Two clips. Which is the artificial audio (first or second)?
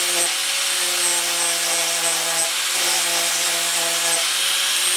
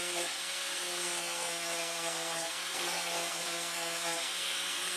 second